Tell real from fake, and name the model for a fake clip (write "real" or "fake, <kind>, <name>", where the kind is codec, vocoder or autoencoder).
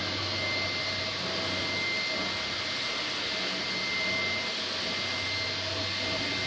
real